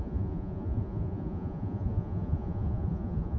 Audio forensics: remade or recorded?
remade